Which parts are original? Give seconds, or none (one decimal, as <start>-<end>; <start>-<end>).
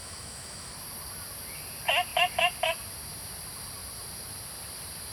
0.7-5.1